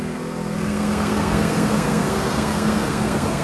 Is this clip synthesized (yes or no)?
yes